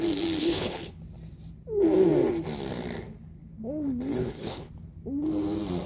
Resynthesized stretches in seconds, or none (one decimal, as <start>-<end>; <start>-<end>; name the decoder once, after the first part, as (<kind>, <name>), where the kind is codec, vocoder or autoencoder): 0.4-1.0 (codec, HILCodec); 4.2-4.7